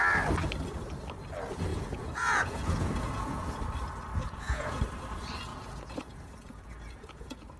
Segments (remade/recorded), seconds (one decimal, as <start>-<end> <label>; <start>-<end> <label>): 0.0-1.7 recorded; 1.7-3.6 remade; 3.6-4.1 recorded; 4.1-4.8 remade; 4.8-5.5 recorded; 5.5-7.6 remade